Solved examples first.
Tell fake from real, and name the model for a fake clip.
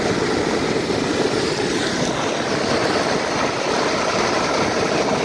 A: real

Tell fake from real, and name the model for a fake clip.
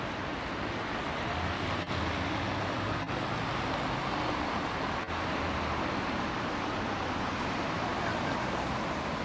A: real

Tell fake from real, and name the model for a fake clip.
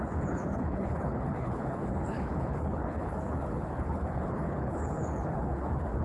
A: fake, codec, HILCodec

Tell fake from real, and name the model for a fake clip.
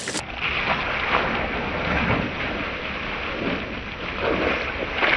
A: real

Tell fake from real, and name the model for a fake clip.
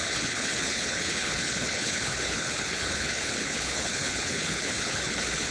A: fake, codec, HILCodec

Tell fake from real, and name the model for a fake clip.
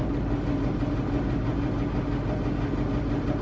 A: real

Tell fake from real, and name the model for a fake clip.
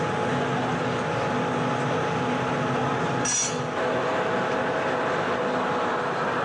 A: real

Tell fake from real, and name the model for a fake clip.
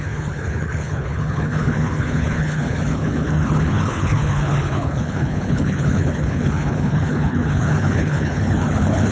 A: fake, codec, HILCodec